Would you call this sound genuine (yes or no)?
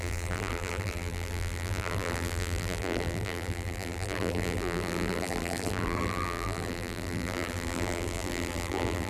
no